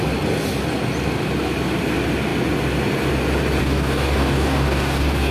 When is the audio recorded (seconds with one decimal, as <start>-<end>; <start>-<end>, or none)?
0.0-3.6